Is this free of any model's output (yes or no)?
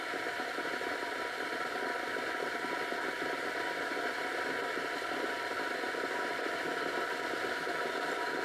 yes